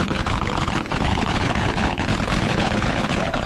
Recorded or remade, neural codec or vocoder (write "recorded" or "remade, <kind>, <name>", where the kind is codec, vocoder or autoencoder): remade, codec, HILCodec